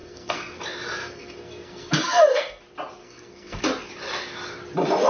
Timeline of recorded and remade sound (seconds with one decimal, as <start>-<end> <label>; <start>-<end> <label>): 0.0-0.6 remade; 0.6-1.0 recorded; 1.0-2.6 remade; 2.6-3.0 recorded; 3.0-3.6 remade; 3.6-5.1 recorded